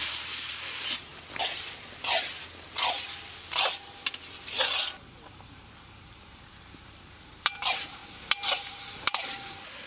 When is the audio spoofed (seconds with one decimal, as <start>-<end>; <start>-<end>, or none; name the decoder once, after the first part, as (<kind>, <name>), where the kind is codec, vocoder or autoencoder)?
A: 0.0-1.1 (vocoder, BigVGAN v2); 5.2-8.0; 9.1-9.9